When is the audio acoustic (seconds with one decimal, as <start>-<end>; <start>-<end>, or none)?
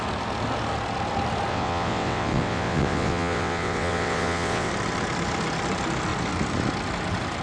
0.0-1.5; 4.7-7.4